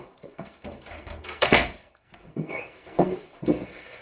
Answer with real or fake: fake